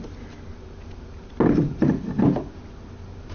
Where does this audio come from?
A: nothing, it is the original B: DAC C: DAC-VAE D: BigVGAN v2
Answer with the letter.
A